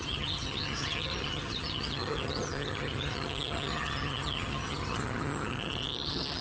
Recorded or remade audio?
remade